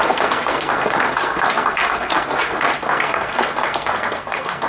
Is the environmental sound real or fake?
fake